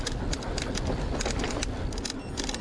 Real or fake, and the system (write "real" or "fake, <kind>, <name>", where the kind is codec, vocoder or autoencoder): real